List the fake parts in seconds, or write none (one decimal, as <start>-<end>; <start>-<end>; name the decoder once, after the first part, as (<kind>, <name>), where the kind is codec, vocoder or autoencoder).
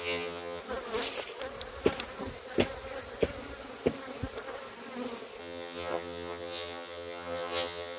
0.0-0.6 (vocoder, HiFi-GAN); 5.4-8.0